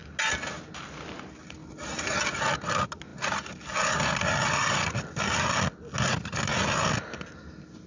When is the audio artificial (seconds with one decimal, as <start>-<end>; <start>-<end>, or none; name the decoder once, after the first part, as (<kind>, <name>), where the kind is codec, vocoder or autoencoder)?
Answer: none

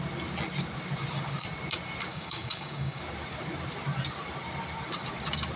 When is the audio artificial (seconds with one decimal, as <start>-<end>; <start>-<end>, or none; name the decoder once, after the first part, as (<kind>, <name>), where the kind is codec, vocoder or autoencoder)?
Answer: 2.1-3.0 (codec, DAC)

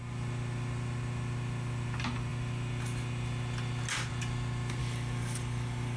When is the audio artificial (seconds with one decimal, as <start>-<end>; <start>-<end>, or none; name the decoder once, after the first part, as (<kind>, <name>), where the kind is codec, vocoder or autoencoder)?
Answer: 4.8-6.0 (codec, DAC)

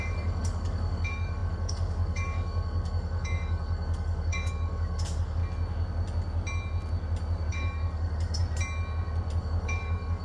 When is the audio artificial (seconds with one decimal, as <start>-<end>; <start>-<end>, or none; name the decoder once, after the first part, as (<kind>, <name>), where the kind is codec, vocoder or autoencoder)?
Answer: 0.0-5.4 (codec, DAC); 7.5-8.4; 9.4-10.2

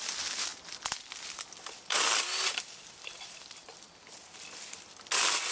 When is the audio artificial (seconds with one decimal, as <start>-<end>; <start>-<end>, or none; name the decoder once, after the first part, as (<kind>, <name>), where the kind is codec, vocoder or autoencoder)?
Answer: none

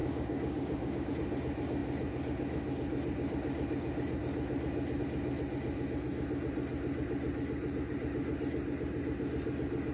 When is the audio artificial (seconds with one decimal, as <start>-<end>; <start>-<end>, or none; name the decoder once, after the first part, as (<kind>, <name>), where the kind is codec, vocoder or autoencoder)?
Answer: 0.0-1.1 (codec, DAC)

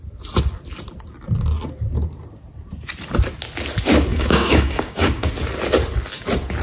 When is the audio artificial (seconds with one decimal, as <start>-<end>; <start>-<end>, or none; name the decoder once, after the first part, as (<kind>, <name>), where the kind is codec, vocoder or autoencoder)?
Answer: 4.1-5.3 (codec, DAC)

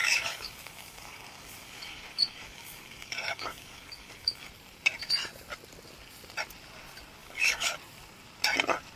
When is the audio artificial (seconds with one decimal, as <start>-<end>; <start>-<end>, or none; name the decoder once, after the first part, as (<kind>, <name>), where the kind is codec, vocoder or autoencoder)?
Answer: 0.0-4.5 (codec, DAC); 7.2-7.7